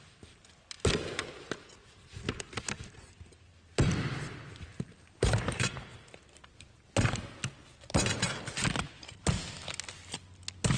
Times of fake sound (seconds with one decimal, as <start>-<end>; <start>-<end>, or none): none